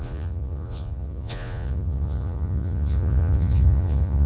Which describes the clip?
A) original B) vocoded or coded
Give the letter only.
B